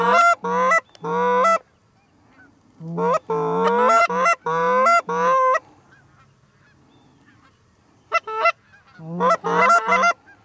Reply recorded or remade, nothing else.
recorded